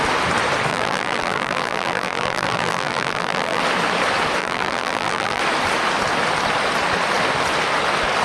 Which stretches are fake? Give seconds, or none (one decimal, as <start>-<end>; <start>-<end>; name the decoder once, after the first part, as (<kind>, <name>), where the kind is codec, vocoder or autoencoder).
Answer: 0.7-3.6 (vocoder, BigVGAN v2); 4.4-5.4